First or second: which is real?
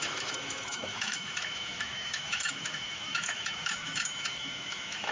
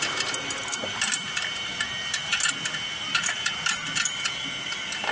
second